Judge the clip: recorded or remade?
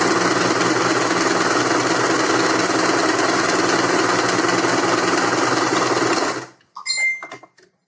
recorded